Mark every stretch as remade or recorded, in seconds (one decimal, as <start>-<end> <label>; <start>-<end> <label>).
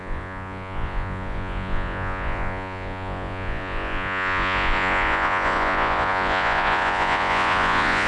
0.0-8.1 remade